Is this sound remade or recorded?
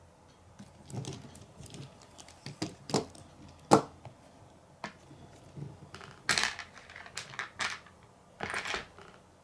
recorded